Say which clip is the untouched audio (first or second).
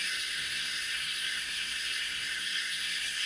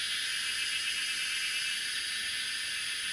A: second